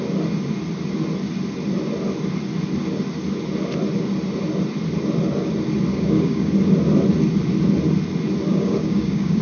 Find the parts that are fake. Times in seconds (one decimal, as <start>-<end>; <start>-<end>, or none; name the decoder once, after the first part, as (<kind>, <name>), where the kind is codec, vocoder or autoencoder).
5.9-6.5 (codec, DAC); 8.5-9.4